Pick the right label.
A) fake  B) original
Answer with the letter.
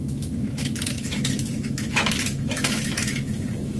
A